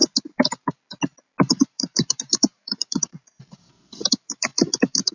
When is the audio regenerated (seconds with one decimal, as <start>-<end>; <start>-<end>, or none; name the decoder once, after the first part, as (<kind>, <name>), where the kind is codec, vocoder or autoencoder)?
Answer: 1.5-5.1 (vocoder, BigVGAN v2)